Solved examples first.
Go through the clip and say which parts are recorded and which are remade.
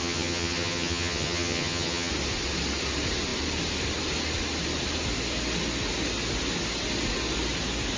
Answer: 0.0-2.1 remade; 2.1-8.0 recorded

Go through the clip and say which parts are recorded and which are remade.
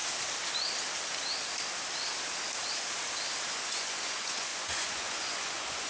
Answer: 0.0-3.5 recorded; 3.5-5.9 remade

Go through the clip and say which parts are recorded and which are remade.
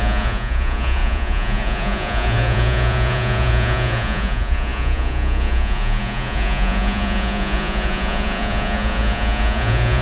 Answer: 0.0-10.0 remade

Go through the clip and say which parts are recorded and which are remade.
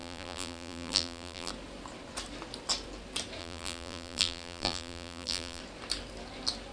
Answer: 0.0-1.5 remade; 1.5-3.4 recorded; 3.4-5.6 remade; 5.6-6.7 recorded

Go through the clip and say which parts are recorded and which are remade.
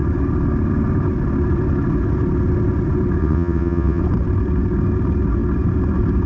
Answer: 0.0-3.2 recorded; 3.2-4.0 remade; 4.0-6.3 recorded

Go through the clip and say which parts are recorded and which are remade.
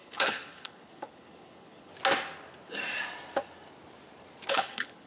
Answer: 0.0-1.9 remade; 1.9-4.5 recorded; 4.5-5.1 remade